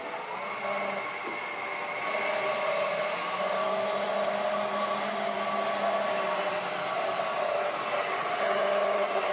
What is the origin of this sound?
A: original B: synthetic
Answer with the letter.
A